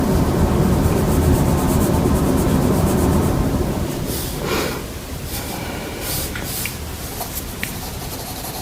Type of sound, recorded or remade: remade